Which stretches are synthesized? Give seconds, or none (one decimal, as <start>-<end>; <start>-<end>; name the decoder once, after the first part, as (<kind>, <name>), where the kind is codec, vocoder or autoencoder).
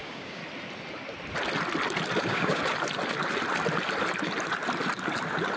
0.0-0.4 (codec, DAC); 2.2-2.6